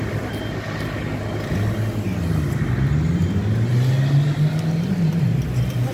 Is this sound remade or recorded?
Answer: recorded